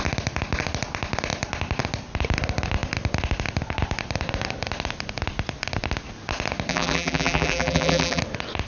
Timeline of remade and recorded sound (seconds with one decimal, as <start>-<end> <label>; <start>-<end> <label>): 0.0-6.7 recorded; 6.7-8.2 remade; 8.2-8.7 recorded